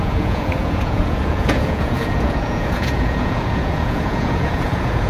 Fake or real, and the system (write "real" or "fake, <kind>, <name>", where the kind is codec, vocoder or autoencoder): fake, vocoder, Vocos